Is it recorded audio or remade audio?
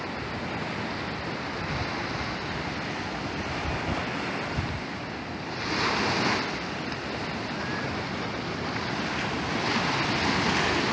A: recorded